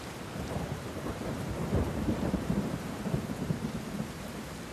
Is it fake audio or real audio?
fake